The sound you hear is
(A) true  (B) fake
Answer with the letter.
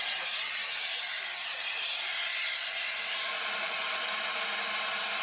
A